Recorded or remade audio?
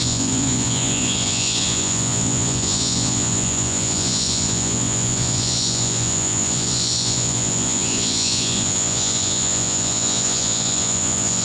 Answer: remade